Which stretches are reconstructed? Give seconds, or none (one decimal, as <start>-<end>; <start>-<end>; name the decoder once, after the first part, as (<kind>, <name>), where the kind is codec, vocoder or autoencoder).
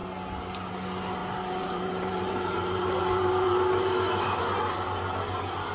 1.2-4.4 (vocoder, BigVGAN v2)